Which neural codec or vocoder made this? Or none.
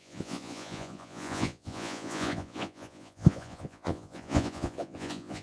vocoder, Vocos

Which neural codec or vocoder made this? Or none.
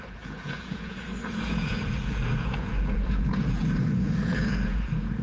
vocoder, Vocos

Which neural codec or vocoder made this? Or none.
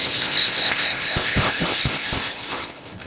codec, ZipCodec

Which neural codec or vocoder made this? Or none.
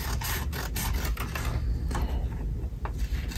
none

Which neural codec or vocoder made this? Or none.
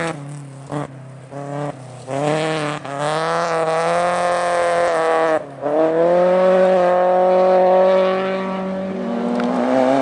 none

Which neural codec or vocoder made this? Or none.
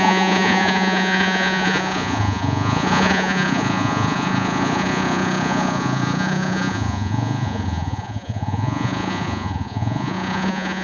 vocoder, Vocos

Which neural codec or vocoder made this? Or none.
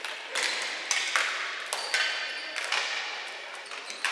none